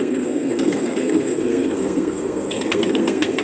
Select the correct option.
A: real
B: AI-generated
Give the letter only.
B